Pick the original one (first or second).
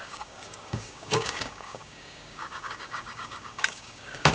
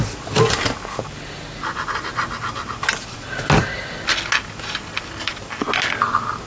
second